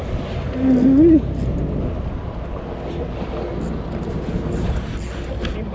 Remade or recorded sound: recorded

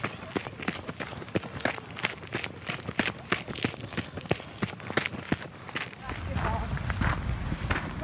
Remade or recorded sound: recorded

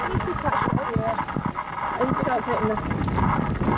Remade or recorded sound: recorded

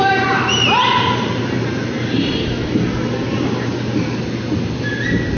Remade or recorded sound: recorded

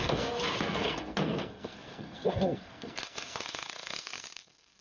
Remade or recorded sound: remade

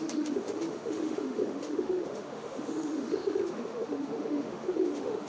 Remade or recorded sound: remade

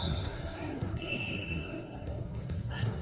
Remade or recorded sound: remade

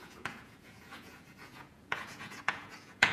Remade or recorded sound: remade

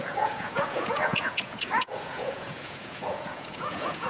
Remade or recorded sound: remade